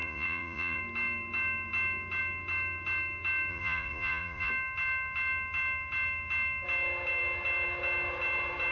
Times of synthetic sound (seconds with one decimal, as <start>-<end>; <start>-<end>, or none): 0.0-0.8; 3.5-4.5